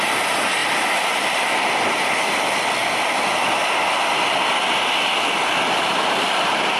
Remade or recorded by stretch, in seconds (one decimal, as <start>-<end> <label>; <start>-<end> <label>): 0.0-6.8 recorded